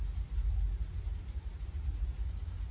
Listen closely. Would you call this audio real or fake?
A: real